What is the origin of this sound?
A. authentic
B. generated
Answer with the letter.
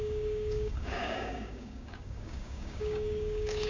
B